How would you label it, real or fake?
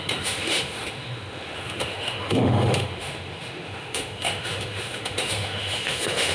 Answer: fake